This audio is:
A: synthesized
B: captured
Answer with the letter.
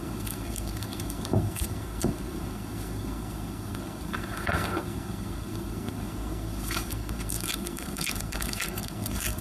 A